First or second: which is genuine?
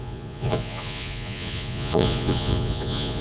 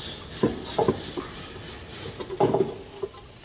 second